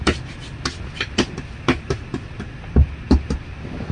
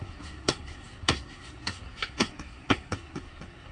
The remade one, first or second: second